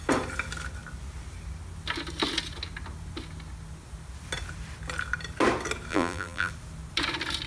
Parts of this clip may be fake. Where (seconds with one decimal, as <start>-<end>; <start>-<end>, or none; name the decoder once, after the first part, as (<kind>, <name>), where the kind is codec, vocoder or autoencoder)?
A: 5.9-6.5 (vocoder, BigVGAN v2)